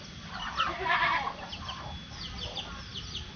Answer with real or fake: real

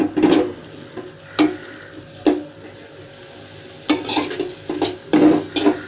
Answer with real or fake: real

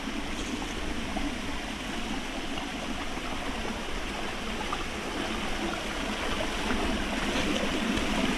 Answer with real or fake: real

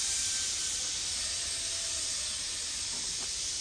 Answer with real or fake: real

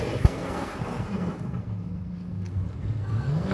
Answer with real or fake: fake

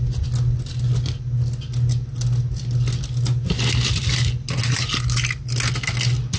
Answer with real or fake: real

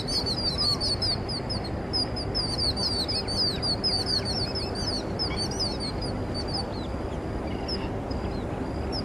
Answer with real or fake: real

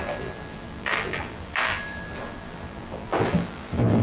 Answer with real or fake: fake